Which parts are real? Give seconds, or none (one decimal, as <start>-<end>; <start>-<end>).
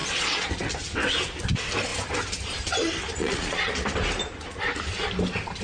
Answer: 0.5-3.2; 3.7-5.6